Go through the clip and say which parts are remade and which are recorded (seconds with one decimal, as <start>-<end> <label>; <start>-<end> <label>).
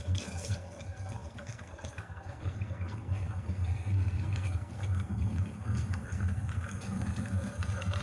0.0-8.0 remade